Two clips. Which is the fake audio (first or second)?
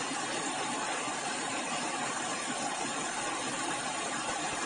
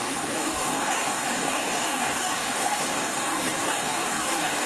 second